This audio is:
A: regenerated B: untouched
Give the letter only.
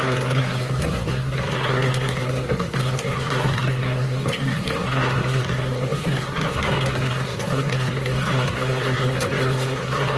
A